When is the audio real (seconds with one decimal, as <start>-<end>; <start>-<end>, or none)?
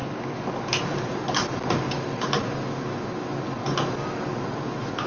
1.2-5.1